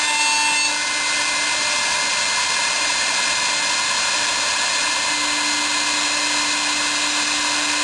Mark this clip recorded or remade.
recorded